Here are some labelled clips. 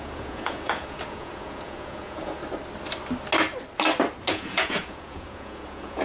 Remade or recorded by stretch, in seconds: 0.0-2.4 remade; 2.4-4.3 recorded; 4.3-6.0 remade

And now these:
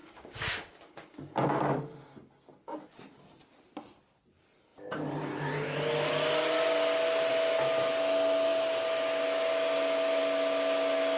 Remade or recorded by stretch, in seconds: 0.0-0.5 remade; 0.5-11.2 recorded